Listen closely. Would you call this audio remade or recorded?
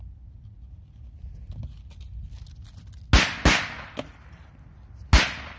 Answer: recorded